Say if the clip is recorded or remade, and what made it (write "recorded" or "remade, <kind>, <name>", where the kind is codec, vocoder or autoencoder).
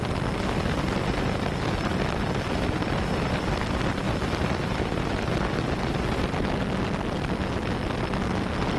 recorded